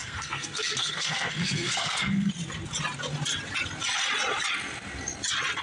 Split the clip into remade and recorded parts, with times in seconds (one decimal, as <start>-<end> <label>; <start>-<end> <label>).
0.0-2.3 remade; 2.3-5.6 recorded